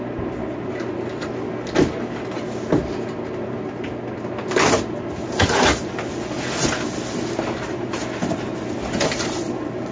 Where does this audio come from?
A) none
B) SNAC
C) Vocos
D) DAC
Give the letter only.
A